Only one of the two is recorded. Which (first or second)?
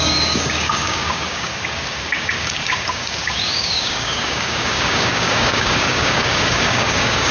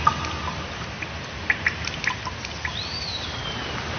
second